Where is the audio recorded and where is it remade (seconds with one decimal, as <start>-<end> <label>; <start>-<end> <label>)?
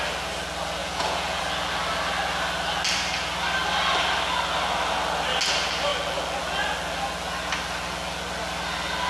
0.0-0.8 recorded; 0.8-1.4 remade; 1.4-9.1 recorded